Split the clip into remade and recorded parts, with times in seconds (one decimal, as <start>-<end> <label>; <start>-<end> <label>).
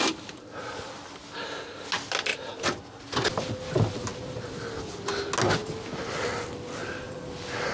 0.0-2.3 recorded; 2.3-3.0 remade; 3.0-6.8 recorded; 6.8-7.3 remade; 7.3-7.7 recorded